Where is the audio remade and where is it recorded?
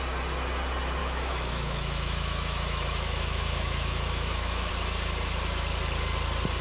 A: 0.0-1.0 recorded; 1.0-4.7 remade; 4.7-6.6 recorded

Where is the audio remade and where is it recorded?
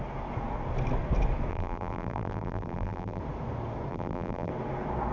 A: 0.0-1.5 recorded; 1.5-3.2 remade; 3.2-3.9 recorded; 3.9-4.5 remade; 4.5-5.1 recorded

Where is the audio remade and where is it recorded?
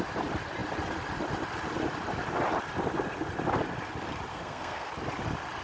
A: 0.0-4.3 recorded; 4.3-4.9 remade; 4.9-5.6 recorded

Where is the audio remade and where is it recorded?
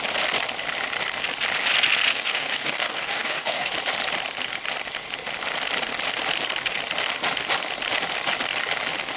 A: 0.0-2.1 recorded; 2.1-3.7 remade; 3.7-9.2 recorded